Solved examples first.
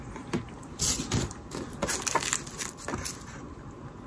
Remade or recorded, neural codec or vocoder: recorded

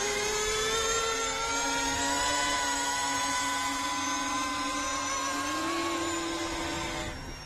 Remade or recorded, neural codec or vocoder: recorded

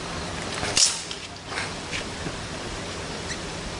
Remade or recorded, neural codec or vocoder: remade, vocoder, BigVGAN v2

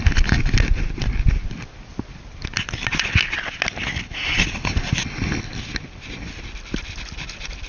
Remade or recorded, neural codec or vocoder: recorded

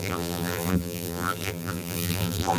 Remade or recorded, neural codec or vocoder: remade, vocoder, BigVGAN v2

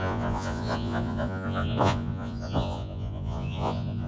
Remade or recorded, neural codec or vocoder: remade, vocoder, Vocos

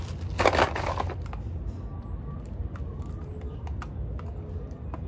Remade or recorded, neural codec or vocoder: recorded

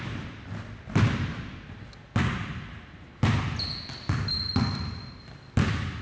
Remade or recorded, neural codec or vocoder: recorded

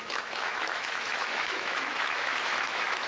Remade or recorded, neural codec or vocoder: remade, autoencoder, DAC-VAE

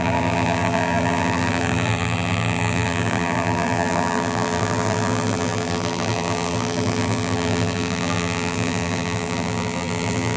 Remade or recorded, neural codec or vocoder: remade, vocoder, BigVGAN v2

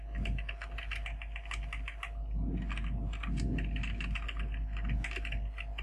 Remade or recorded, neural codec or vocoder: recorded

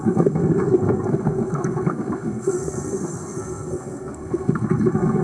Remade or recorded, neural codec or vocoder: remade, codec, SNAC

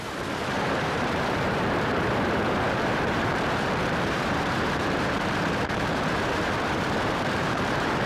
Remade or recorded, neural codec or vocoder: remade, vocoder, BigVGAN v2